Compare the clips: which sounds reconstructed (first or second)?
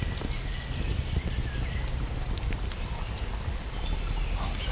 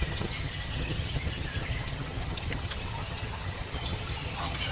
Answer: second